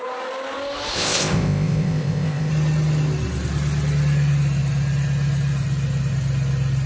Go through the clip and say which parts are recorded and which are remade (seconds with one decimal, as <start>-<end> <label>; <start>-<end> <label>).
0.0-0.9 recorded; 0.9-2.5 remade; 2.5-6.9 recorded